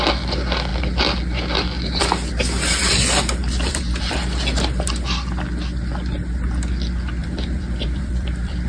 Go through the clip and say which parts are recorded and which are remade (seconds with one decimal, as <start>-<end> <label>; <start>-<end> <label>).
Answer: 0.0-3.4 recorded; 3.4-4.3 remade; 4.3-7.2 recorded; 7.2-8.7 remade